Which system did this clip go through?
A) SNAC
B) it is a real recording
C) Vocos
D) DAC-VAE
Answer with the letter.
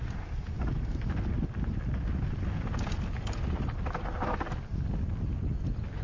B